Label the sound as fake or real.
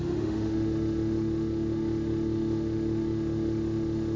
fake